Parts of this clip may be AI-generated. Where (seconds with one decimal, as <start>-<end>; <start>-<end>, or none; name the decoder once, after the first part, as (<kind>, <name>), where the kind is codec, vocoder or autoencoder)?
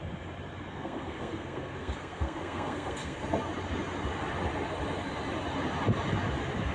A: 0.7-3.2 (codec, SNAC)